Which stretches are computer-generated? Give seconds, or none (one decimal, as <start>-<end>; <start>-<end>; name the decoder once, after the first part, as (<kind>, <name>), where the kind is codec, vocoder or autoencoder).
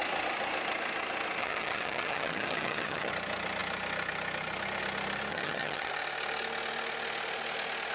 1.4-3.1 (vocoder, HiFi-GAN); 5.3-5.9